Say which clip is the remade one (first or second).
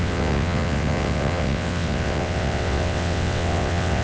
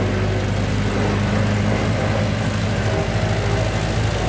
first